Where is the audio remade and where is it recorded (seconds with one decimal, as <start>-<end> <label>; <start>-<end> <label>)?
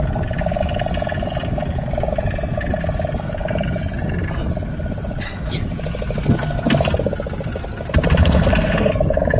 0.0-8.2 recorded; 8.2-8.9 remade; 8.9-9.4 recorded